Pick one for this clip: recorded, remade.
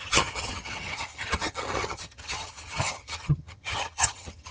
remade